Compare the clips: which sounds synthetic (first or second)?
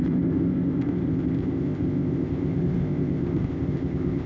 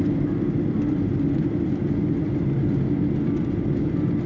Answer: first